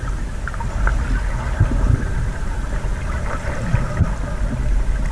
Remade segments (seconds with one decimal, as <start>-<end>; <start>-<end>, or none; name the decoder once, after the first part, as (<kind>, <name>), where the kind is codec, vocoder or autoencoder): none